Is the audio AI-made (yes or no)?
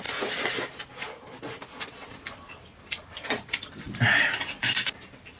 yes